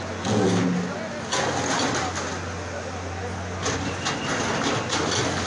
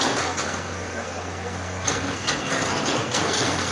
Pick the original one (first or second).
first